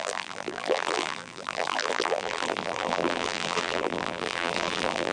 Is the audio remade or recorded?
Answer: remade